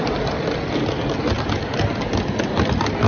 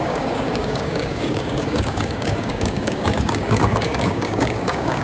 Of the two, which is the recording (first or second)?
first